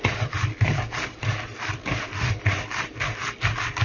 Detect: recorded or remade recorded